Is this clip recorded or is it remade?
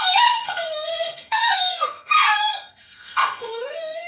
remade